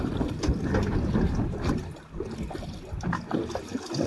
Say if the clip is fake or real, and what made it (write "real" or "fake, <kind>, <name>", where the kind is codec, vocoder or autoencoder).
real